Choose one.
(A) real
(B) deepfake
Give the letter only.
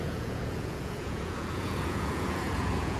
B